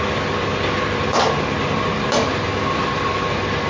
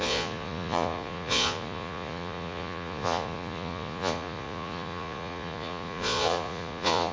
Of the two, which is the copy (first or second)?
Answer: second